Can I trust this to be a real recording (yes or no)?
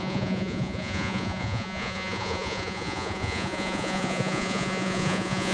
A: no